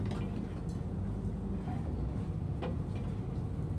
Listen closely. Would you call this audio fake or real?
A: real